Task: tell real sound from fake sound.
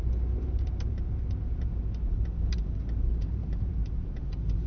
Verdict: fake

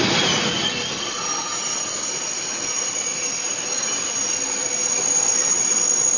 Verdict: fake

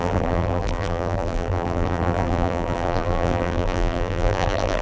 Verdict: fake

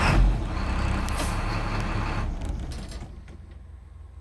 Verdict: real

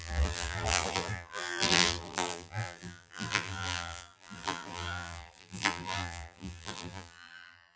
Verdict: fake